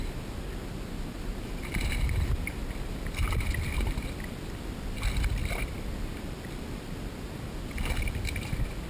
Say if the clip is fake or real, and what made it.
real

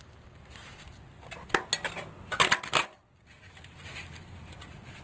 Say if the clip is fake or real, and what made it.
real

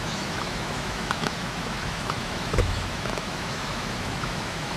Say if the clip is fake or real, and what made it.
fake, autoencoder, DAC-VAE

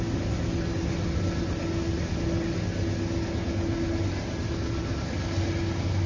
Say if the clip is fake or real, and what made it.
real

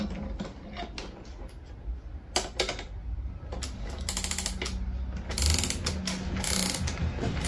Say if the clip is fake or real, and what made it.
real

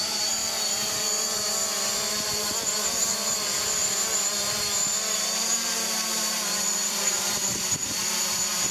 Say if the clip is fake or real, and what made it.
fake, vocoder, BigVGAN v2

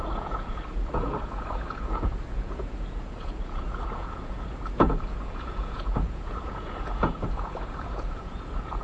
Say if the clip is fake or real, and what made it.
fake, vocoder, Vocos